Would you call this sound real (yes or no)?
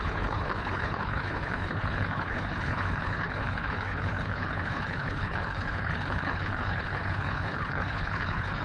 no